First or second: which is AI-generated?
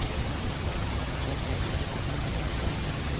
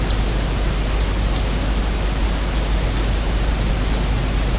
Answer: first